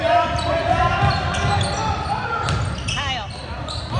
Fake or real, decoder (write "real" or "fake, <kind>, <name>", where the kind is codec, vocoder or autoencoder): real